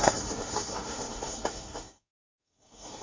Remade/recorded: remade